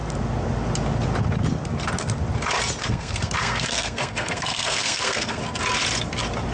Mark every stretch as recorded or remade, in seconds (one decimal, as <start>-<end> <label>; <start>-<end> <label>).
0.0-2.8 recorded; 2.8-5.4 remade; 5.4-6.5 recorded